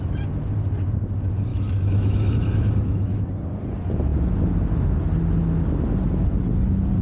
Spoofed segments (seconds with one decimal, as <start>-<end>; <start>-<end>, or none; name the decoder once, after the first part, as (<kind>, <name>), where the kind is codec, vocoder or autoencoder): 1.5-3.2 (autoencoder, DAC-VAE)